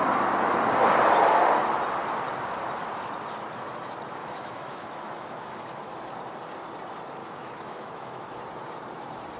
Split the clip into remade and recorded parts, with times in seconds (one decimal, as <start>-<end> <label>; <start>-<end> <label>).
0.0-4.2 recorded; 4.2-5.8 remade; 5.8-7.2 recorded; 7.2-8.3 remade; 8.3-9.4 recorded